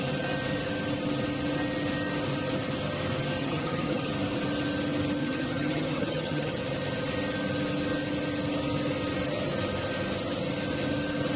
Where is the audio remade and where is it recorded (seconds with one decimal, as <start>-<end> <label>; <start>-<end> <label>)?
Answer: 0.0-3.4 recorded; 3.4-4.1 remade; 4.1-5.2 recorded; 5.2-6.6 remade; 6.6-11.4 recorded